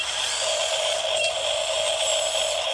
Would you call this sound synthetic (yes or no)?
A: no